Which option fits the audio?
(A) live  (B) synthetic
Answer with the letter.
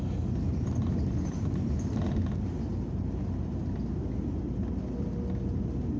A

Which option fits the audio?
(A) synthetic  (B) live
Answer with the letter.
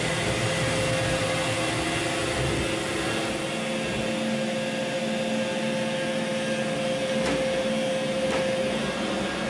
B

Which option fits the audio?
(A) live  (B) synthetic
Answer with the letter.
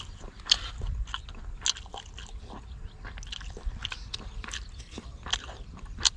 A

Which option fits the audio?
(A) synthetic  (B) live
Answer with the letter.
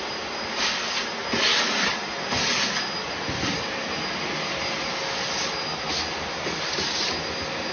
B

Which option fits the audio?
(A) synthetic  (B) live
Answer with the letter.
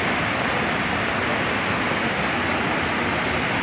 B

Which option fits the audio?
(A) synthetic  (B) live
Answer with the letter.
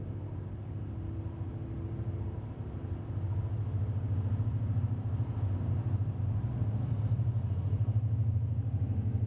B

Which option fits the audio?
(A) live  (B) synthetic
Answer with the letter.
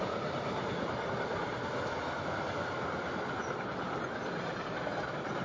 A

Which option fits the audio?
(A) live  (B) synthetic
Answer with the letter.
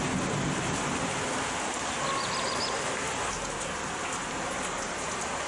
A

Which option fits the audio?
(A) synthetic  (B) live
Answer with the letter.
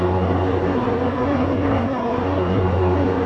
A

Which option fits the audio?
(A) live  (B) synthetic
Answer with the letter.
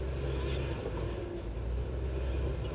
A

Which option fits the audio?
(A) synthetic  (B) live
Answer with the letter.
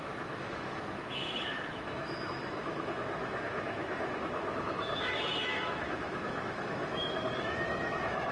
A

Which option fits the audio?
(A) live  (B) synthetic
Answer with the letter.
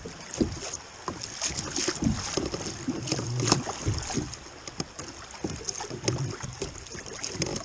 A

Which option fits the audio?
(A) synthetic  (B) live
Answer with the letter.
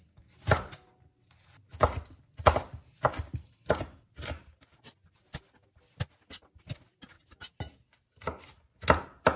B